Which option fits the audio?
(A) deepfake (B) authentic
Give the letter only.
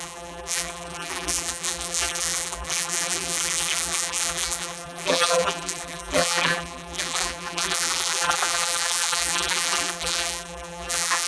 A